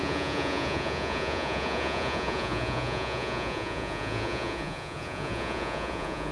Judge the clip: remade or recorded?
remade